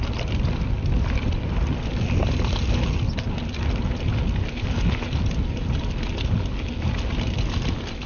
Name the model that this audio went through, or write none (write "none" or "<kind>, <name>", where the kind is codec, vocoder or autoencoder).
none